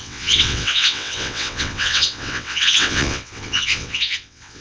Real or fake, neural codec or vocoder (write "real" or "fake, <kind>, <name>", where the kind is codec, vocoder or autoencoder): fake, vocoder, WaveNeXt